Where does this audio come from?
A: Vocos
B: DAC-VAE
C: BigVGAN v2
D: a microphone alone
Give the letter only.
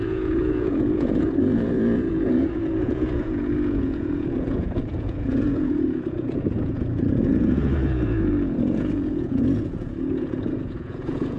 A